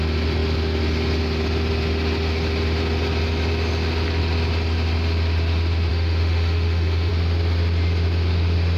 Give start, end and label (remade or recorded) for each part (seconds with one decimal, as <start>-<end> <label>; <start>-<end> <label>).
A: 0.0-5.9 recorded; 5.9-7.1 remade; 7.1-8.8 recorded